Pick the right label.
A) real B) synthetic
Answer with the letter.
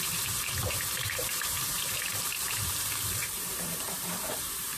B